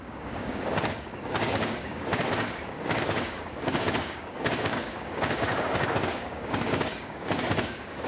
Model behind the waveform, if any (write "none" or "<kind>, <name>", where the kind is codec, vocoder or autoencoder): codec, DAC